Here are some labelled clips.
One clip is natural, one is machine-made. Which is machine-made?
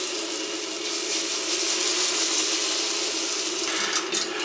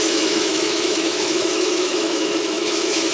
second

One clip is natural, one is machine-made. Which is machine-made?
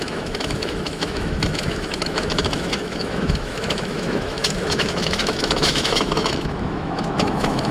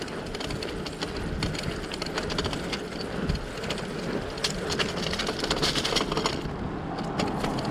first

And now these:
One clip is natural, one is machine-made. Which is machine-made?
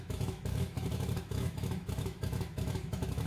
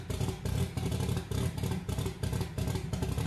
first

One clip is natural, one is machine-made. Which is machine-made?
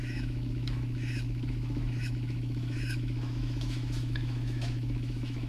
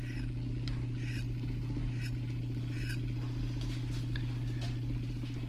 first